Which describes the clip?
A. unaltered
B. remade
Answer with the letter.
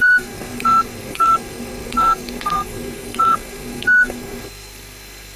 B